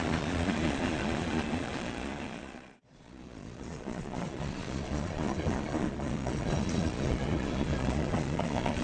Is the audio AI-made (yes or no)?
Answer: yes